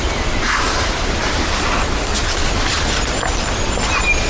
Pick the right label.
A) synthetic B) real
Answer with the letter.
B